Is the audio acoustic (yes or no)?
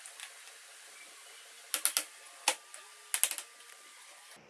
yes